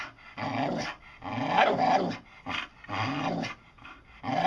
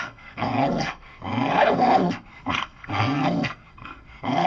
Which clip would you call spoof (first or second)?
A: second